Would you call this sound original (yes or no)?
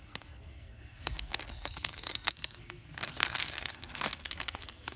no